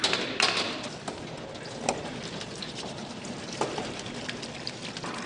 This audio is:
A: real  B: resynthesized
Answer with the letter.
A